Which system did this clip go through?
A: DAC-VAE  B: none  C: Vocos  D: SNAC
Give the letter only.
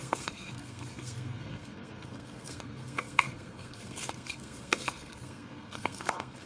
D